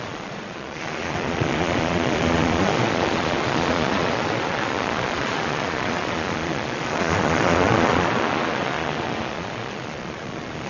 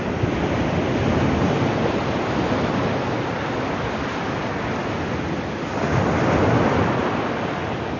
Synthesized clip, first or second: first